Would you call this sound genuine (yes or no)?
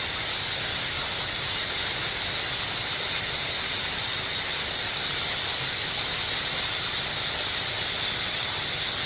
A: yes